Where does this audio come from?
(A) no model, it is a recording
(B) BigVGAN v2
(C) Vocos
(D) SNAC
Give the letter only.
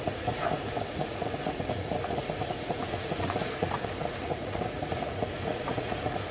C